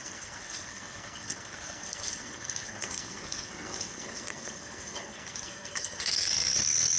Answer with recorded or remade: remade